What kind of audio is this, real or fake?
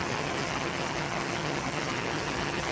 fake